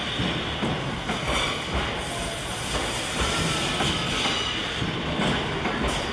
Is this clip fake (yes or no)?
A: no